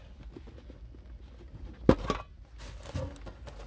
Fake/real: real